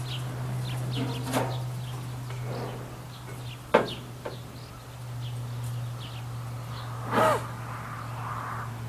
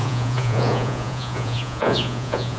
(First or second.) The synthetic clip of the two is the second